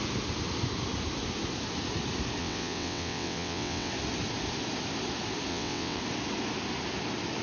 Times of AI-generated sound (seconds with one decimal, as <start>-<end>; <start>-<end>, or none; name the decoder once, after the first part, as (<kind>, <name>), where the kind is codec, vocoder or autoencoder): 2.4-3.9 (vocoder, WaveNeXt); 5.5-6.0

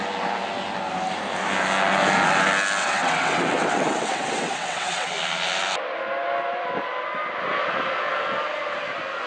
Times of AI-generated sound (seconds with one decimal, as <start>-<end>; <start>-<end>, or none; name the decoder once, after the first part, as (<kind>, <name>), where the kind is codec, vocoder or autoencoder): 2.8-5.1 (vocoder, WaveNeXt)

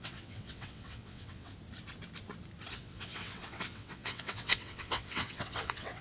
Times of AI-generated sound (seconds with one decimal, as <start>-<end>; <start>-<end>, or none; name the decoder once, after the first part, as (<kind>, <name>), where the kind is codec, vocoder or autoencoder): 0.0-1.5 (vocoder, WaveNeXt); 2.7-6.0

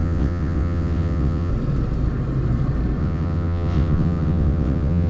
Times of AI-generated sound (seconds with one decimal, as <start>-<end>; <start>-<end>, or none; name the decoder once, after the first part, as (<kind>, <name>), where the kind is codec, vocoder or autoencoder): 0.0-1.5 (vocoder, WaveNeXt); 3.0-5.1

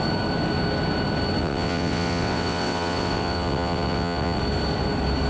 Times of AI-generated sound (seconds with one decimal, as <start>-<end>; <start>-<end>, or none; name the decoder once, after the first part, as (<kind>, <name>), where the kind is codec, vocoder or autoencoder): 1.4-4.4 (vocoder, WaveNeXt)

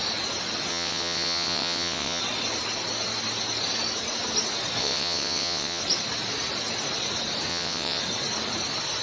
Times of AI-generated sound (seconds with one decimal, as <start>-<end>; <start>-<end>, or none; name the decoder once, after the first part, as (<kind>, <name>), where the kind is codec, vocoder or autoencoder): 0.7-2.2 (vocoder, WaveNeXt); 4.8-5.8; 7.5-8.0

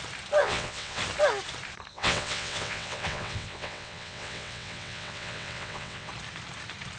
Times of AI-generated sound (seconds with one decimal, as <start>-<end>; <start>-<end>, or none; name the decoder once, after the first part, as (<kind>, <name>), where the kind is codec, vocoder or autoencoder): 0.4-1.0 (vocoder, WaveNeXt); 1.9-6.1